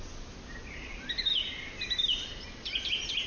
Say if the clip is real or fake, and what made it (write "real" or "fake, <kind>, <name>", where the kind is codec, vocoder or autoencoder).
real